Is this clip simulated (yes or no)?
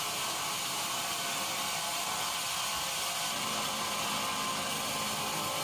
no